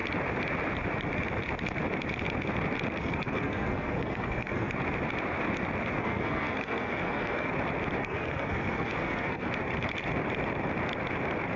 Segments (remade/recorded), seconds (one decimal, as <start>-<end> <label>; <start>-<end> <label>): 0.0-3.0 recorded; 3.0-4.7 remade; 4.7-6.0 recorded; 6.0-7.5 remade; 7.5-8.0 recorded; 8.0-9.5 remade; 9.5-11.6 recorded